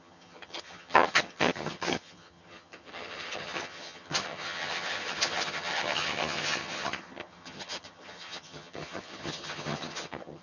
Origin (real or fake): fake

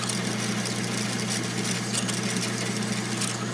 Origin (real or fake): real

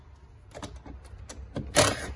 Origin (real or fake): real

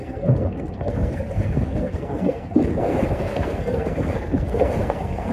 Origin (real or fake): fake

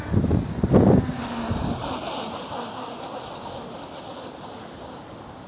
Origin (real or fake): real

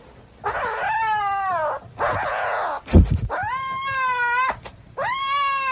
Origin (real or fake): real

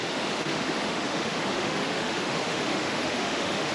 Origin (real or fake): fake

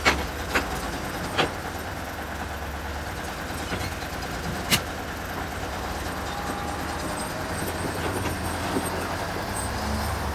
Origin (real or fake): real